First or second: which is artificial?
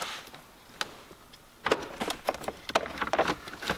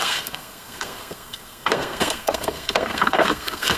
second